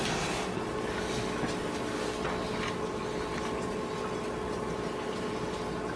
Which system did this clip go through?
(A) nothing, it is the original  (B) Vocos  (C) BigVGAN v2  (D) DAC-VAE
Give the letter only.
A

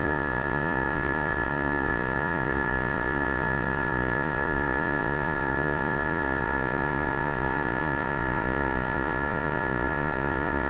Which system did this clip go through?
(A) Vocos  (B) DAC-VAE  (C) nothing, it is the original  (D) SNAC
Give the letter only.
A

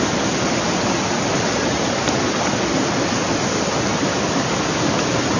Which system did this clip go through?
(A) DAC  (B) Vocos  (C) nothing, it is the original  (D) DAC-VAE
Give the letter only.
C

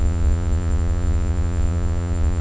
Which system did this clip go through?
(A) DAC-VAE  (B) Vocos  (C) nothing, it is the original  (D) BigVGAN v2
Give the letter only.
B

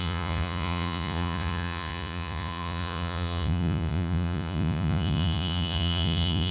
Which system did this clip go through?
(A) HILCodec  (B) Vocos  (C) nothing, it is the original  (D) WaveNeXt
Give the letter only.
B